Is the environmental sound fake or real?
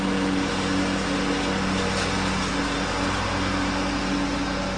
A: real